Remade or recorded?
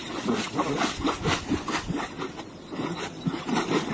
recorded